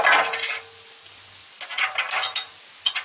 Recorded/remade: recorded